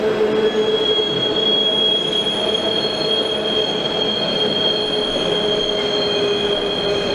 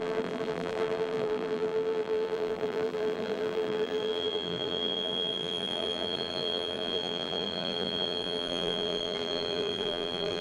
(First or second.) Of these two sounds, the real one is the first